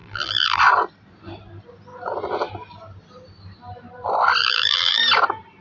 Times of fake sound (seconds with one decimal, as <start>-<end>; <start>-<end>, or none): 0.0-0.6; 4.4-5.0